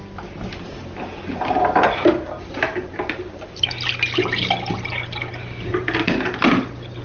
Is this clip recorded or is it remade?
recorded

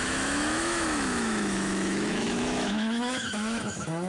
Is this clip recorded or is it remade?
remade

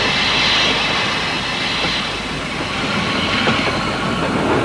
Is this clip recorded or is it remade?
recorded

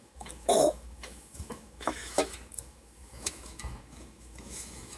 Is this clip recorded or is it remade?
remade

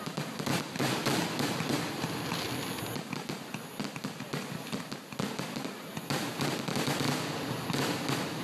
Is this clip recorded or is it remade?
recorded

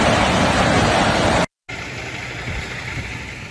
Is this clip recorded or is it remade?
recorded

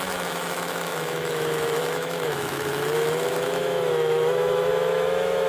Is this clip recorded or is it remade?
remade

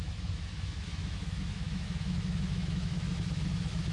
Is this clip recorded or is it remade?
remade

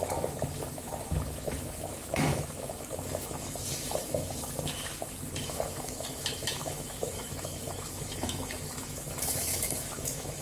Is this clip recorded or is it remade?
remade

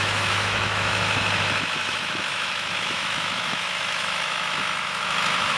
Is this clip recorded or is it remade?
remade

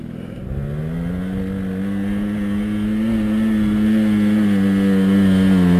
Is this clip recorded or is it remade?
recorded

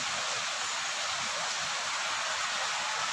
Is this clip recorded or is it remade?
recorded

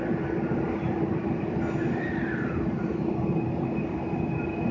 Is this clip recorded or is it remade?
recorded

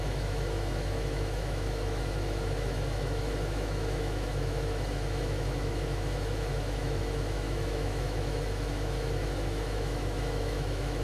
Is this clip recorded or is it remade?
remade